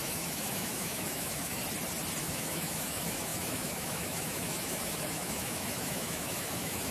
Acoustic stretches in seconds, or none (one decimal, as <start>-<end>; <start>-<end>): 1.6-2.2